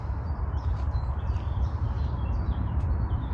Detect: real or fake fake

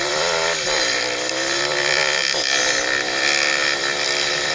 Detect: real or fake real